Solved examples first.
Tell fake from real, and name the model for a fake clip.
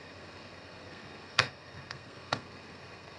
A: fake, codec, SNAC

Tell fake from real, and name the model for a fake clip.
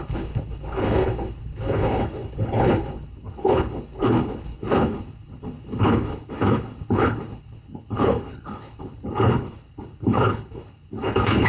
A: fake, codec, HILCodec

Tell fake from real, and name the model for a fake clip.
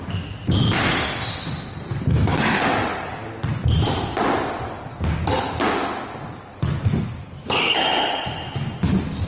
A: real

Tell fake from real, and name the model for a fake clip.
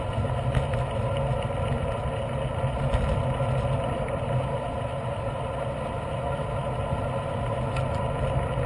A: real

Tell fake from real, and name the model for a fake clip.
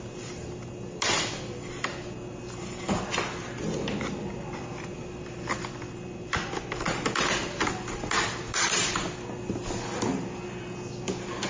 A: real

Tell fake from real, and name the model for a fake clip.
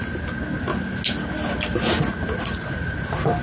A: real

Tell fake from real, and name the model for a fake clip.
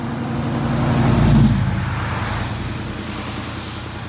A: real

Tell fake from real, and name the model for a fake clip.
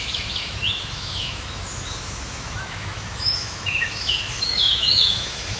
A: fake, autoencoder, DAC-VAE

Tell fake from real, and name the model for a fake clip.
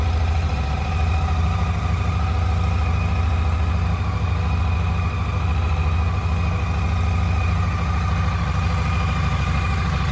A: real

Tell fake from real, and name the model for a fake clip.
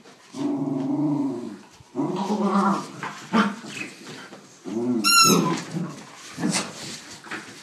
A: real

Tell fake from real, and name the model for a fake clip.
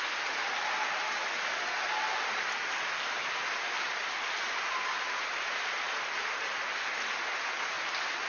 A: real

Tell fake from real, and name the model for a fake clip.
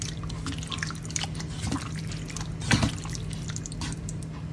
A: real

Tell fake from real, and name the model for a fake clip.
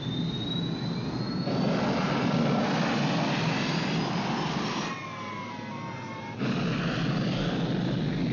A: real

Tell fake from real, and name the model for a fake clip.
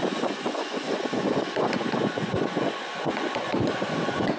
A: fake, vocoder, Vocos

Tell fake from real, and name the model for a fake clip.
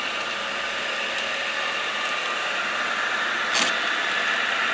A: real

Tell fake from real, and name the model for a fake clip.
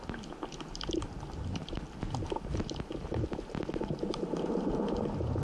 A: real